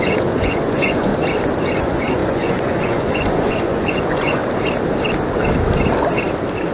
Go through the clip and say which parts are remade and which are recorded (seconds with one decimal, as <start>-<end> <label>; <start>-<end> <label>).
0.0-1.1 remade; 1.1-1.8 recorded; 1.8-4.4 remade; 4.4-6.7 recorded

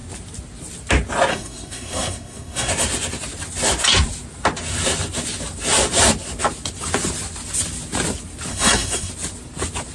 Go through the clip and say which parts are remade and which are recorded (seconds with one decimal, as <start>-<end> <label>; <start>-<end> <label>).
0.0-1.3 recorded; 1.3-2.7 remade; 2.7-8.5 recorded; 8.5-9.1 remade; 9.1-9.9 recorded

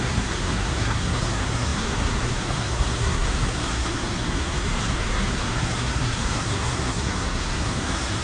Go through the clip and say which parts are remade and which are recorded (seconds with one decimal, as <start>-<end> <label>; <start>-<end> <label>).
0.0-8.2 remade